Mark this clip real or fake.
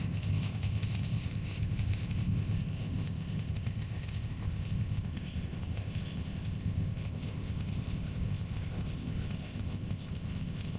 fake